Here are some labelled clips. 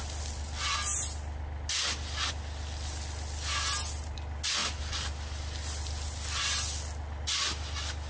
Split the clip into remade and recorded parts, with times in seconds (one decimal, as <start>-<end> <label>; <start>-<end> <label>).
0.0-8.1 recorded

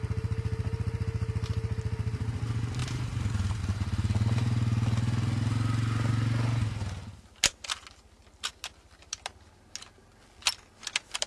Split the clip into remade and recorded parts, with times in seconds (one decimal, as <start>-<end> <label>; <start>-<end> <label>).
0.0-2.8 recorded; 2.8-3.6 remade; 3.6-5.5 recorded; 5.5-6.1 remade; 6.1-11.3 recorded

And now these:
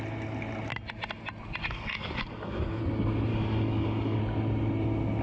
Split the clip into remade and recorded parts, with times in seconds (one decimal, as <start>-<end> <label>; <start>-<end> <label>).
0.0-1.6 recorded; 1.6-2.8 remade; 2.8-3.3 recorded; 3.3-4.2 remade; 4.2-5.2 recorded